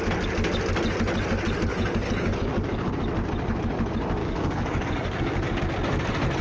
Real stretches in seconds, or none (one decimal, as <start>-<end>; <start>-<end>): 0.0-1.7; 2.9-4.2; 5.6-6.4